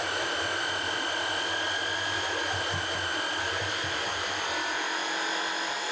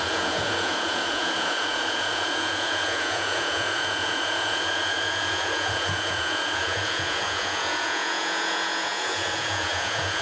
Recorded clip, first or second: first